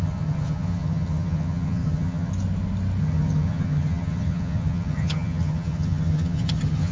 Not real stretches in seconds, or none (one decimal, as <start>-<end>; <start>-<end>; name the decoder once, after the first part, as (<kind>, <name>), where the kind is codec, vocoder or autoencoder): 0.0-2.3 (vocoder, HiFi-GAN); 3.0-6.9